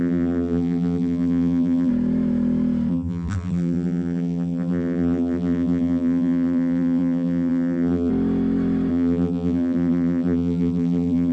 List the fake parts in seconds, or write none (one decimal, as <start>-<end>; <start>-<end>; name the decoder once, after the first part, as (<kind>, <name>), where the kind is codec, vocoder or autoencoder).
0.0-1.9 (vocoder, BigVGAN v2); 2.9-8.1; 8.9-11.3